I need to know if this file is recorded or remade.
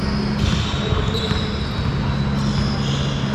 recorded